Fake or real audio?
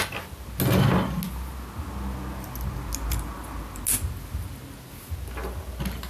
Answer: real